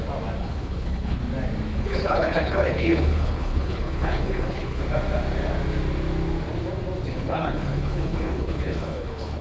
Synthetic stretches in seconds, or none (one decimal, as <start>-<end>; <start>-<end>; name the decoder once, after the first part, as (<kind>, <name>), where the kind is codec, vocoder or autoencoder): 0.4-1.2 (codec, HILCodec); 1.7-4.8; 7.1-9.4